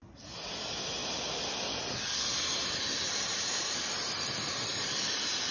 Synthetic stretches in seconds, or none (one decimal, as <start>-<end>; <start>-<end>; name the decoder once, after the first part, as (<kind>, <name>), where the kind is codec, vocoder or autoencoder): none